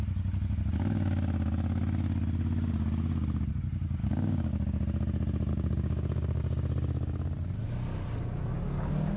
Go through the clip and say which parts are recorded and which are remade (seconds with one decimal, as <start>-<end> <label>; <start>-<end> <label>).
0.0-4.0 recorded; 4.0-4.5 remade; 4.5-5.5 recorded; 5.5-6.4 remade; 6.4-9.2 recorded